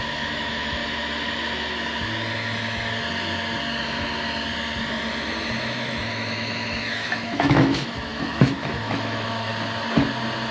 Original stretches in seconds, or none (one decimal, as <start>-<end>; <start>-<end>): 0.8-5.5; 9.5-10.5